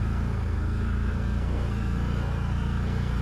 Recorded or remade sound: remade